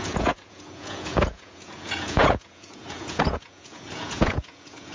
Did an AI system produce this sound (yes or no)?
yes